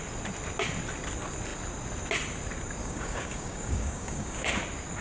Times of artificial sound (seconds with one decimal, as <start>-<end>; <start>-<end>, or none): 2.8-4.5